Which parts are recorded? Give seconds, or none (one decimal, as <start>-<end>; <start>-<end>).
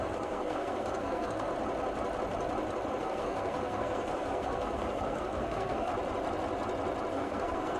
1.5-3.0; 5.9-7.1